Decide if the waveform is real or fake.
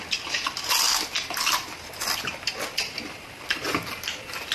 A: real